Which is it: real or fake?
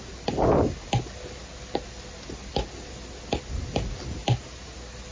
real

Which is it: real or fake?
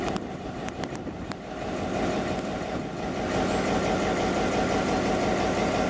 real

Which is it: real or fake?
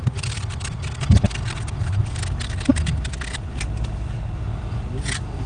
real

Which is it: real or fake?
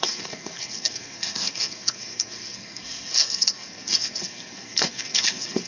fake